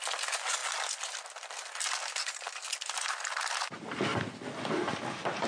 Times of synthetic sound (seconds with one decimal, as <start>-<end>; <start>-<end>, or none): none